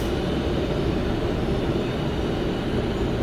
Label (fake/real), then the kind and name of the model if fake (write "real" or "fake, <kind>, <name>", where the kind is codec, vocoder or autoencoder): real